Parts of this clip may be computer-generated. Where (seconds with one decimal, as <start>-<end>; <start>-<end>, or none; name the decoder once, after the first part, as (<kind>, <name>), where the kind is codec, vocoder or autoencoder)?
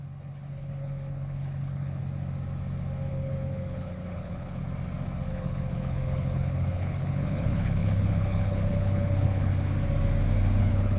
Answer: 0.0-2.0 (codec, HILCodec); 3.1-4.6; 5.3-9.5; 10.6-11.0